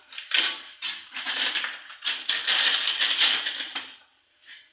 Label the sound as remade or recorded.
remade